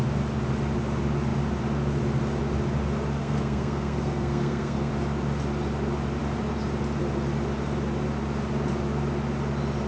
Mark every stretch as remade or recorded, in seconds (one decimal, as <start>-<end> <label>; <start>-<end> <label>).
0.0-3.2 recorded; 3.2-4.9 remade; 4.9-9.9 recorded